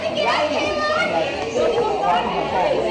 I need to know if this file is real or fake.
real